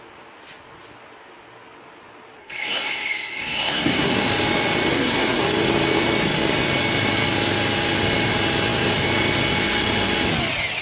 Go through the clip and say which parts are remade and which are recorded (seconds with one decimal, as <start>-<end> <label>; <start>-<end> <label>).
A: 0.0-2.4 recorded; 2.4-4.1 remade; 4.1-4.9 recorded; 4.9-5.4 remade; 5.4-10.8 recorded